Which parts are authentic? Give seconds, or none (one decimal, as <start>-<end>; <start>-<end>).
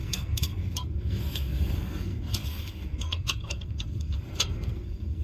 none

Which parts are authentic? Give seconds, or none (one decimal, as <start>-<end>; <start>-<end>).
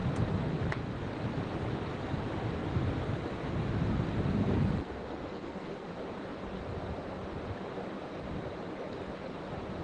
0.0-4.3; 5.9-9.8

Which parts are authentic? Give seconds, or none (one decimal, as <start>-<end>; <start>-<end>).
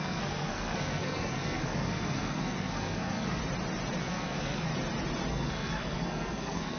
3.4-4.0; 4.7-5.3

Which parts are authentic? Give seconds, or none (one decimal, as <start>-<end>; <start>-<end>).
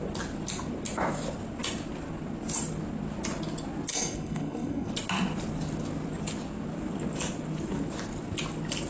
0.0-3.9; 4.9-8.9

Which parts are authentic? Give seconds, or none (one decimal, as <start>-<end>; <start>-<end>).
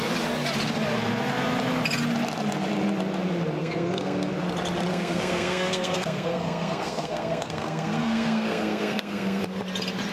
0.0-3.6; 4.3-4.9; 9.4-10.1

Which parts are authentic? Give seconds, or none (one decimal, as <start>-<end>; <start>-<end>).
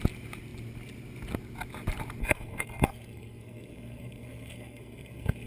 0.0-2.2